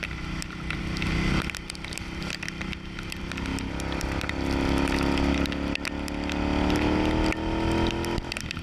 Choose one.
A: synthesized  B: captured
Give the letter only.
B